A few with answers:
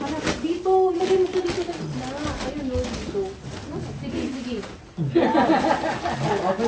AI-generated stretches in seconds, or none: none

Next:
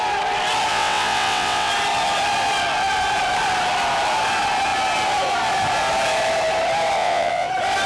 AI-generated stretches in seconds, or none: 0.7-1.7 (vocoder, WaveNeXt); 7.0-7.5